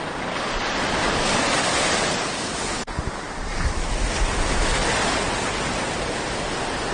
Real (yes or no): yes